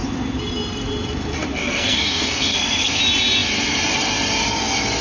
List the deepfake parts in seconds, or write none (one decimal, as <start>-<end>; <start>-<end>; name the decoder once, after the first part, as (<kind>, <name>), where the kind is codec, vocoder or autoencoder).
1.6-3.0 (codec, SNAC)